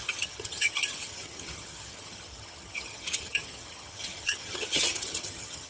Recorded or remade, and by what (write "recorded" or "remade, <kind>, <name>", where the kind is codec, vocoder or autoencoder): remade, vocoder, HiFi-GAN